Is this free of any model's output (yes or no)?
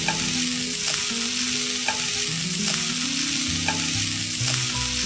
yes